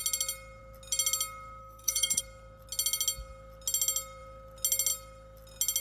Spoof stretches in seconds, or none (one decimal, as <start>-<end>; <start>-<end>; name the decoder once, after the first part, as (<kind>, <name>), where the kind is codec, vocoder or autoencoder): 1.6-2.2 (codec, SNAC)